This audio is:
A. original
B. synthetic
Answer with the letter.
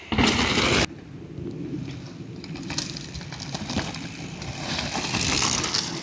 A